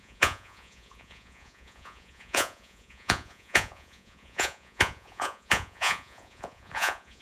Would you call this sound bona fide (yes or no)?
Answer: no